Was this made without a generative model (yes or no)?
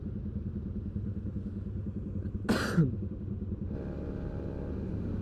yes